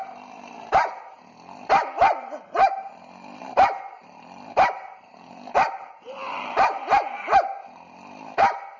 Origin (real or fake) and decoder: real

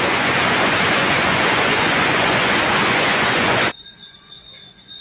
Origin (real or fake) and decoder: fake, vocoder, Vocos